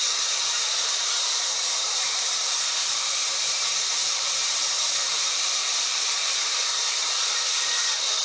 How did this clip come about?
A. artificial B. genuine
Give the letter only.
A